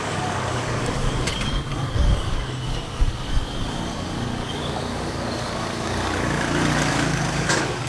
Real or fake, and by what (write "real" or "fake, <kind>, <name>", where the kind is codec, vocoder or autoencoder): fake, codec, DAC